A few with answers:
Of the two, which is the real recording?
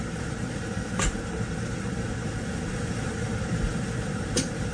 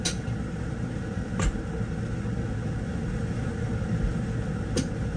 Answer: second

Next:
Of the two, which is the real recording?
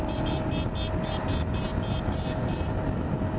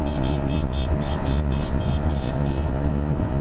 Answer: first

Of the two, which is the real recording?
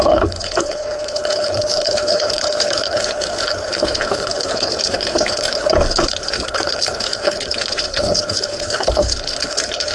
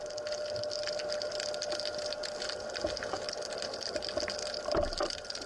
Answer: second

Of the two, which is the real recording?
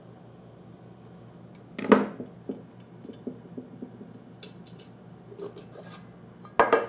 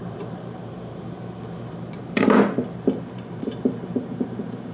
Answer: first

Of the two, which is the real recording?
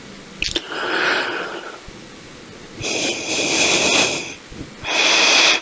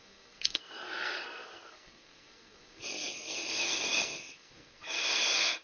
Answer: first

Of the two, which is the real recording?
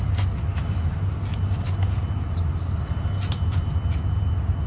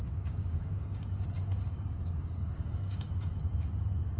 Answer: first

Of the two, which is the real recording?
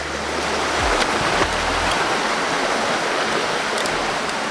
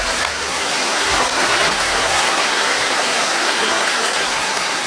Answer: first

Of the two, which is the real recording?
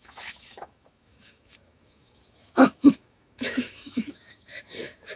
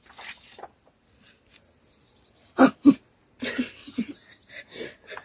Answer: second